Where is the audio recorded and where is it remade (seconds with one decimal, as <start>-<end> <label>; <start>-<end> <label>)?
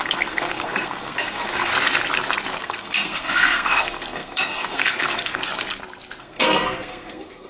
0.0-1.7 remade; 1.7-2.6 recorded; 2.6-5.4 remade; 5.4-6.2 recorded; 6.2-7.5 remade